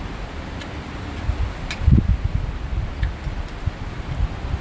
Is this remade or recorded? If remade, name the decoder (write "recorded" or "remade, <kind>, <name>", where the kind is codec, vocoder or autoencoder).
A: recorded